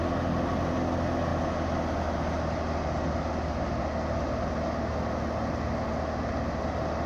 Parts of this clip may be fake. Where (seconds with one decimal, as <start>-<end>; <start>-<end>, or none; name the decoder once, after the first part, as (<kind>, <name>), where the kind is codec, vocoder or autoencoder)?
none